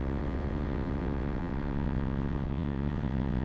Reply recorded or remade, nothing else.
remade